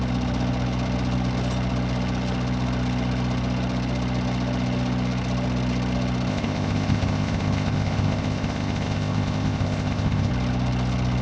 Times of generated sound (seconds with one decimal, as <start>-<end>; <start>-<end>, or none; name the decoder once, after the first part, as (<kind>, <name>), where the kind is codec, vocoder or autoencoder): 6.3-10.3 (codec, ZipCodec)